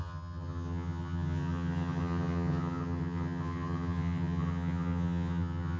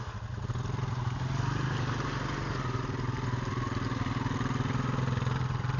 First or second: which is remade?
first